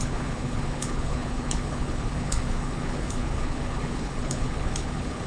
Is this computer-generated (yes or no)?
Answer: yes